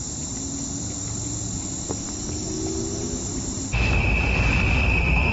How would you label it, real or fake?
fake